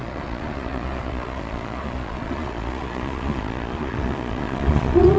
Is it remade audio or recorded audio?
remade